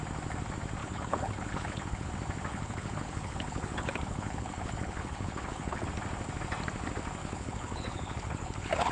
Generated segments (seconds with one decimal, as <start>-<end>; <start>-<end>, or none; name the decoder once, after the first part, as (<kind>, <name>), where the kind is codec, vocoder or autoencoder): 0.8-2.1 (codec, HILCodec); 2.5-5.9; 7.2-8.9